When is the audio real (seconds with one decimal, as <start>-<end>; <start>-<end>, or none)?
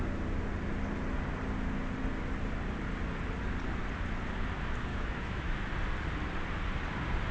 0.0-4.9; 5.7-7.3